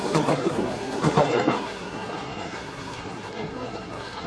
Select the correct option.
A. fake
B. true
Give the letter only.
A